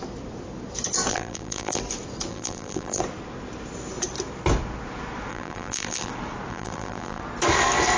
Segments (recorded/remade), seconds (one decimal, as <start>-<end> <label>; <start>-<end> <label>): 0.0-1.1 recorded; 1.1-1.8 remade; 1.8-2.3 recorded; 2.3-3.0 remade; 3.0-5.3 recorded; 5.3-6.1 remade; 6.1-6.5 recorded; 6.5-7.2 remade; 7.2-8.0 recorded